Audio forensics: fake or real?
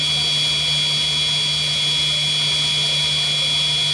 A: real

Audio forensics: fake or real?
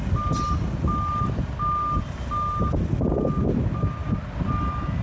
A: real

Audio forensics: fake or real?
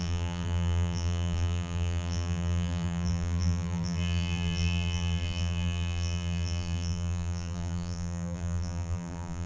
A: fake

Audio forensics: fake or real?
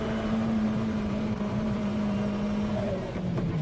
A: fake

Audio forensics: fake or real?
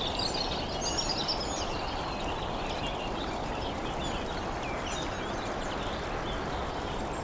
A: real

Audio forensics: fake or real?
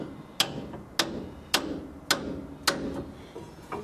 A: real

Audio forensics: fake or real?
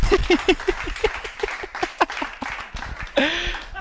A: real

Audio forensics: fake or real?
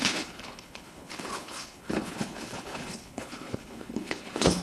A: fake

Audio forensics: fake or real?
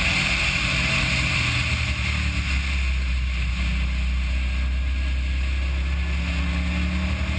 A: real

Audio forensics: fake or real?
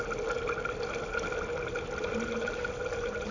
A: real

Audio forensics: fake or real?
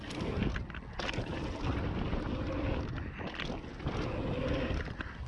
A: real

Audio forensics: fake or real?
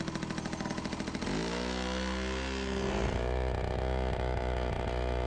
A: real